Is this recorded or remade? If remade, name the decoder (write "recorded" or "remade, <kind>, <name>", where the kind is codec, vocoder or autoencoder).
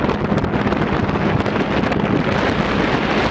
recorded